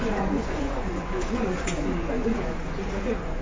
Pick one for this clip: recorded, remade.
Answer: remade